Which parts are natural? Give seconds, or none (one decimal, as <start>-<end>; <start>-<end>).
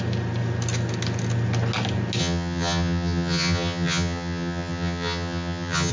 0.0-2.2